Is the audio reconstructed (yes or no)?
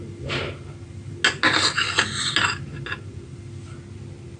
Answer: no